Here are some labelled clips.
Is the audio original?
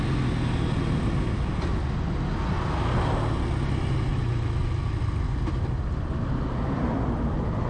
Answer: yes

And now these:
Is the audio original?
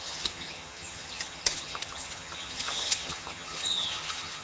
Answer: no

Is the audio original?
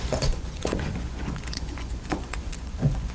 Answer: no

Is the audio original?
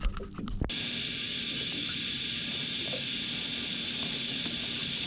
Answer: yes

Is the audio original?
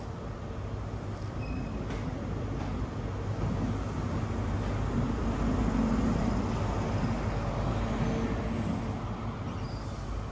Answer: yes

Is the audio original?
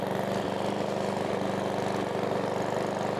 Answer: yes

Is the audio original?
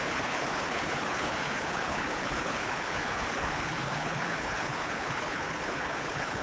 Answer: no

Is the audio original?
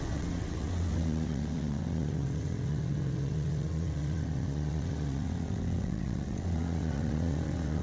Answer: no